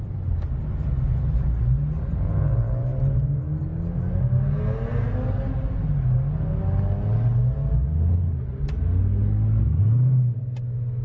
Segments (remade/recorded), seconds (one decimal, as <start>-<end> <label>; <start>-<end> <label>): 0.0-11.0 recorded